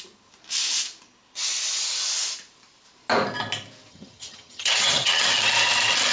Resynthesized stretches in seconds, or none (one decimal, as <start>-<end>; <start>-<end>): 3.9-5.2